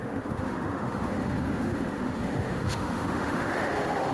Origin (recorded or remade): remade